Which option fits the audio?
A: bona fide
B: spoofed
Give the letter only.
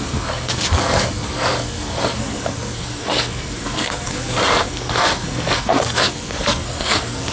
B